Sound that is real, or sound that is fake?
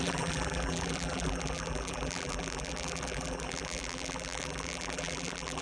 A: fake